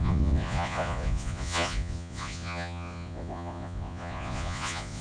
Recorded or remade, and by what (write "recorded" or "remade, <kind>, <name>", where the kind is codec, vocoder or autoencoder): remade, vocoder, Vocos